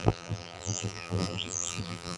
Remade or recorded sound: remade